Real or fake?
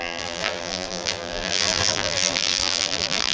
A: fake